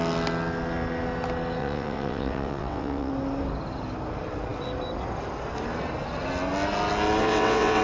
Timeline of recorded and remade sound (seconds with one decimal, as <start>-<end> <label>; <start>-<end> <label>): 0.0-1.6 recorded; 1.6-3.1 remade; 3.1-7.2 recorded; 7.2-7.8 remade